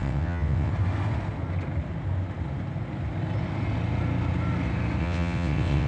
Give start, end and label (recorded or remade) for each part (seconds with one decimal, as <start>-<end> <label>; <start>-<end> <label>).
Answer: 0.0-0.7 remade; 0.7-5.0 recorded; 5.0-5.9 remade